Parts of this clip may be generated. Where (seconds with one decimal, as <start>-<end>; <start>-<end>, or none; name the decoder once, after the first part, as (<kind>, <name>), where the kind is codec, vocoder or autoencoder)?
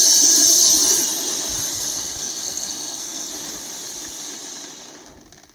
1.7-3.3 (codec, SNAC)